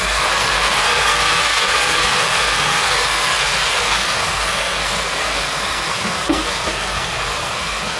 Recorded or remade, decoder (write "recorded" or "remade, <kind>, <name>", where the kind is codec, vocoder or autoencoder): remade, codec, SNAC